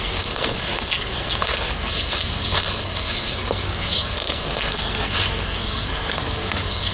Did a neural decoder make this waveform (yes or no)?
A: yes